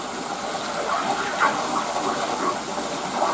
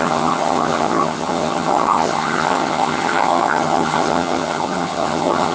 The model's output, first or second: second